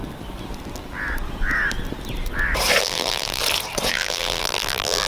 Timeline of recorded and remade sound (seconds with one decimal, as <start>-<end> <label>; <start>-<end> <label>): 0.0-2.8 recorded; 2.8-3.4 remade; 3.4-3.9 recorded; 3.9-5.1 remade